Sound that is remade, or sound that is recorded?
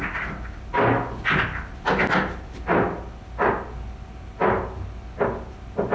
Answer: recorded